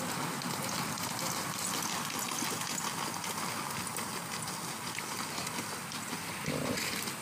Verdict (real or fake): real